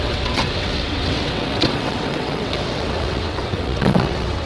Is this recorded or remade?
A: remade